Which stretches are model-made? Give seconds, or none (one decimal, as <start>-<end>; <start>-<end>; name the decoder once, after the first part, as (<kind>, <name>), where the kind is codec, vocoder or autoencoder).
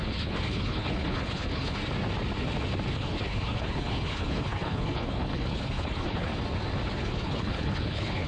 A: 0.0-1.8 (codec, HILCodec); 2.9-6.3; 6.9-8.3